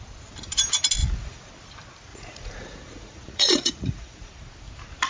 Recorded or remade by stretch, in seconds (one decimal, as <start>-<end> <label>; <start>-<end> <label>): 0.0-1.0 recorded; 1.0-1.5 remade; 1.5-2.1 recorded; 2.1-4.3 remade; 4.3-5.1 recorded